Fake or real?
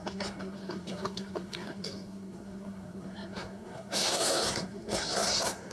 fake